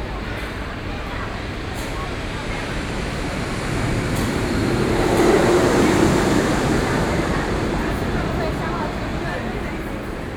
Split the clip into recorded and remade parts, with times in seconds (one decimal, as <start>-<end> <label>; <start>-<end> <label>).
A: 0.0-9.1 remade; 9.1-9.7 recorded; 9.7-10.4 remade